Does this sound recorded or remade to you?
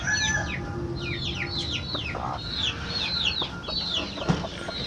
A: recorded